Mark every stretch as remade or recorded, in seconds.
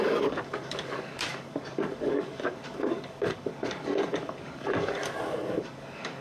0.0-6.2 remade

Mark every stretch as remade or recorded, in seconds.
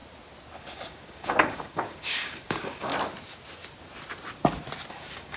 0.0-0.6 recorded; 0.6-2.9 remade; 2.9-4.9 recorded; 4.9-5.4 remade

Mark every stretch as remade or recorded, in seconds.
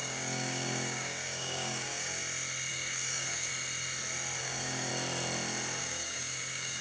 0.0-2.2 remade; 2.2-2.7 recorded; 2.7-3.5 remade; 3.5-4.4 recorded; 4.4-4.9 remade; 4.9-5.8 recorded; 5.8-6.8 remade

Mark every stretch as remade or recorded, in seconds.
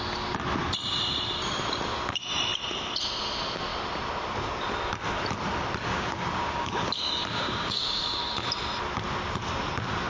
0.0-5.9 recorded; 5.9-8.2 remade; 8.2-10.1 recorded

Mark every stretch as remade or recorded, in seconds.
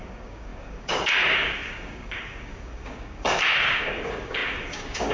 0.0-5.1 remade